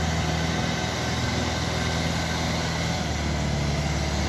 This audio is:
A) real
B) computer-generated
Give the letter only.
A